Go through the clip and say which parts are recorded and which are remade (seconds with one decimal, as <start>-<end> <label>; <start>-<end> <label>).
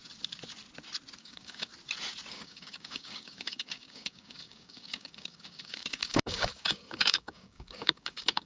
0.0-1.2 recorded; 1.2-1.7 remade; 1.7-2.3 recorded; 2.3-8.5 remade